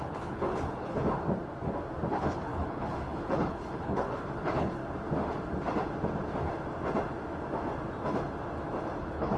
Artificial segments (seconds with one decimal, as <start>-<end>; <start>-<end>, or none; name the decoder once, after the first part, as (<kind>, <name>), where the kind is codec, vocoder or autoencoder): 0.0-1.0 (codec, HILCodec); 2.1-4.8; 9.0-9.4

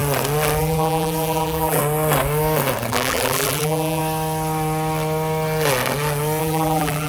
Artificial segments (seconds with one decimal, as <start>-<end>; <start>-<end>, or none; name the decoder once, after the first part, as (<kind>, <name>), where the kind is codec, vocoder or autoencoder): 0.6-1.8 (vocoder, BigVGAN v2); 2.9-4.0; 6.4-7.1

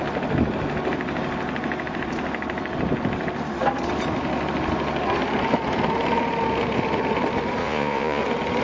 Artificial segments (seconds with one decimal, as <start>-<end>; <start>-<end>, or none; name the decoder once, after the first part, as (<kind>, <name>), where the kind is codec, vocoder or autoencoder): 7.6-8.2 (vocoder, Vocos)

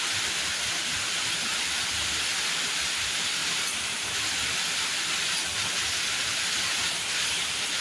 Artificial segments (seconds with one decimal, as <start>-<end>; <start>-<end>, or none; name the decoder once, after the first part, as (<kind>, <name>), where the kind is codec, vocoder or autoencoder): none

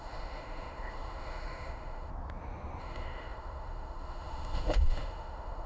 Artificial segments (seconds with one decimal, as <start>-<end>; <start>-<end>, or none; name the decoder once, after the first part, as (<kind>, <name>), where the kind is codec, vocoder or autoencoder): 0.0-2.1 (autoencoder, DAC-VAE); 2.8-5.7

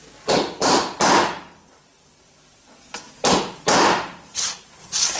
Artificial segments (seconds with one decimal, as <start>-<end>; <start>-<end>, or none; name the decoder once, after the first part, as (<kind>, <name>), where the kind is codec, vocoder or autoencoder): none